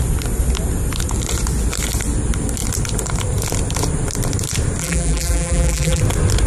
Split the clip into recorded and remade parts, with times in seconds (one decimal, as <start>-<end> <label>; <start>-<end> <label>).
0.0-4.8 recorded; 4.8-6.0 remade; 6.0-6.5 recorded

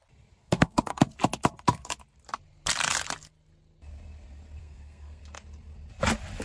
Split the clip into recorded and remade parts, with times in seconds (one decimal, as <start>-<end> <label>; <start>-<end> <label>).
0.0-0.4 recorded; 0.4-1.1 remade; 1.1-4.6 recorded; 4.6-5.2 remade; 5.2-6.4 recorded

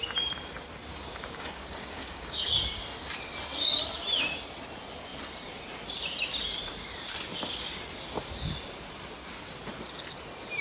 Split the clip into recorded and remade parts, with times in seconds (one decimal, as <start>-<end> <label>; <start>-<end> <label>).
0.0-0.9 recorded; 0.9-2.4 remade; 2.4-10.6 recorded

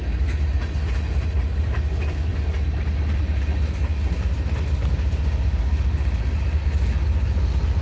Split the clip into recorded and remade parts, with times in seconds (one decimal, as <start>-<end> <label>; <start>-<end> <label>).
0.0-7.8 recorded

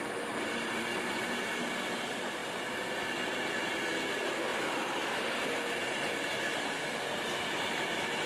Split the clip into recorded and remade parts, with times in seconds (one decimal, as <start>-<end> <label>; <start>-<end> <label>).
0.0-8.3 recorded

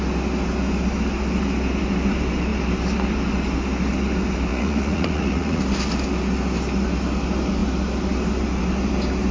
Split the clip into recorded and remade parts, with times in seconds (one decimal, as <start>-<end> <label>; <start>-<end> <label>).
0.0-4.5 recorded; 4.5-5.6 remade; 5.6-9.3 recorded

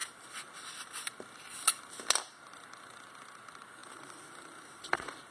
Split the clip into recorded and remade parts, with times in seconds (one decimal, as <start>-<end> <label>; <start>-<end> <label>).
0.0-5.3 recorded